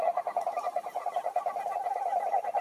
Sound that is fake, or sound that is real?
real